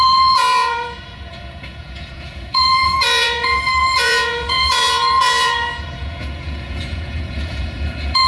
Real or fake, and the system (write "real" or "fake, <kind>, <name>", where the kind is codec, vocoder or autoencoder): fake, vocoder, Vocos